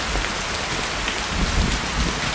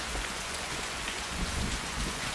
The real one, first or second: first